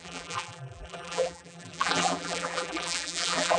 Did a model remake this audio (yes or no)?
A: yes